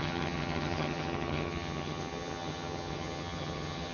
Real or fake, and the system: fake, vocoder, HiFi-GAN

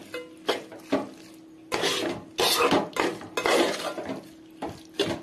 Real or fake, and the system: real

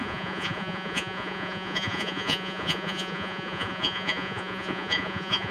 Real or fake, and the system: fake, vocoder, Vocos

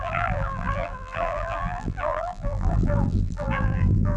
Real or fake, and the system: fake, vocoder, BigVGAN v2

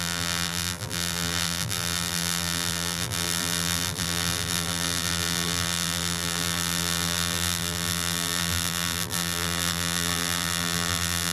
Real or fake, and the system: fake, vocoder, BigVGAN v2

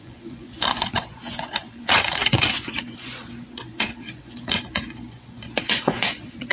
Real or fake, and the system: fake, vocoder, Vocos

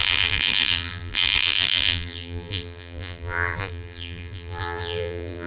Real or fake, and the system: fake, vocoder, BigVGAN v2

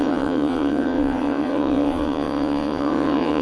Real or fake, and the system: fake, vocoder, WaveNeXt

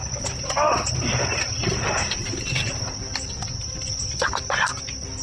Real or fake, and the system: real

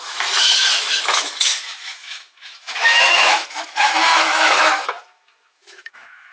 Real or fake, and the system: fake, autoencoder, DAC-VAE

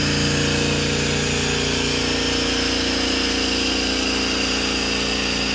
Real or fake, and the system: real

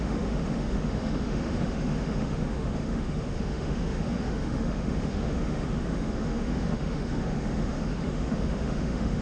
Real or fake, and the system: fake, autoencoder, DAC-VAE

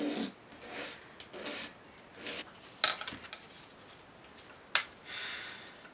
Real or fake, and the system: real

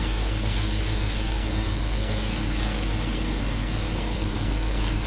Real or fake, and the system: fake, codec, SNAC